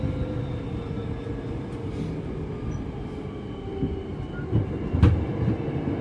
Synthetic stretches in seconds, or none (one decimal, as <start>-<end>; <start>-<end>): none